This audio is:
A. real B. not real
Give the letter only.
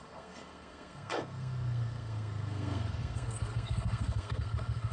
B